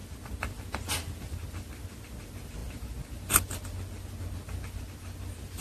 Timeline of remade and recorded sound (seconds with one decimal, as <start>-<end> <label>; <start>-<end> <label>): 0.0-5.6 recorded